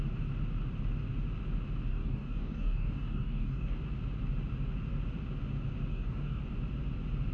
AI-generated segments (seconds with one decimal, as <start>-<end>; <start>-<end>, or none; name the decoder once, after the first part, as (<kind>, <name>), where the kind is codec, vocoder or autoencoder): 1.9-3.8 (codec, DAC); 5.9-6.4